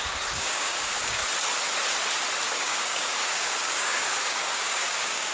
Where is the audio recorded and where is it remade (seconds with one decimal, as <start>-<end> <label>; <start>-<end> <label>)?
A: 0.0-1.2 remade; 1.2-2.5 recorded; 2.5-5.3 remade